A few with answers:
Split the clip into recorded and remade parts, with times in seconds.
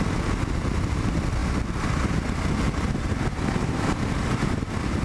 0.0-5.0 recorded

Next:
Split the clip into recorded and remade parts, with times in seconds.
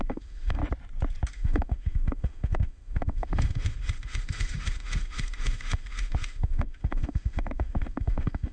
0.0-0.6 remade; 0.6-1.3 recorded; 1.3-8.5 remade